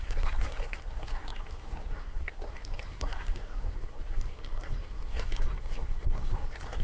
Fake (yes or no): yes